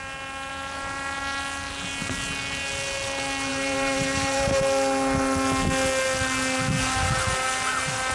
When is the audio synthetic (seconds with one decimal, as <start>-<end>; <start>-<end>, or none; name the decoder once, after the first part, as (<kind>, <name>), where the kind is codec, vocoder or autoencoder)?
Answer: 3.5-4.6 (vocoder, BigVGAN v2)